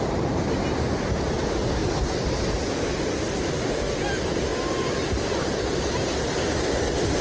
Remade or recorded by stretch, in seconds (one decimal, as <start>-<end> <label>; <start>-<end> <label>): 0.0-7.2 recorded